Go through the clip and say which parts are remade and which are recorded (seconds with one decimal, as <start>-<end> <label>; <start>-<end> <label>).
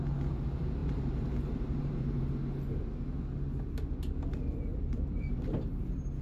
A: 0.0-0.8 recorded; 0.8-2.2 remade; 2.2-4.7 recorded; 4.7-5.8 remade; 5.8-6.2 recorded